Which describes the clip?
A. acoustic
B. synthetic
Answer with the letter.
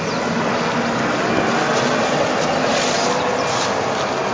A